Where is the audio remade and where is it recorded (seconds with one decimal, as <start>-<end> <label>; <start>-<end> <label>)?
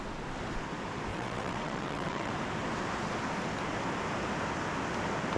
0.0-1.1 recorded; 1.1-2.3 remade; 2.3-5.4 recorded